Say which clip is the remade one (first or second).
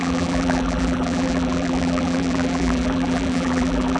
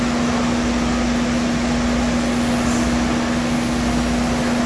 first